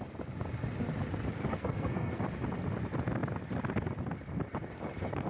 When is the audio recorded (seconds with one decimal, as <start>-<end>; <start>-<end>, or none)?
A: 0.0-1.4; 2.2-5.3